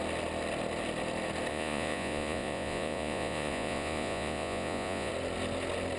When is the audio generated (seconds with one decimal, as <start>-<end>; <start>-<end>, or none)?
1.5-5.1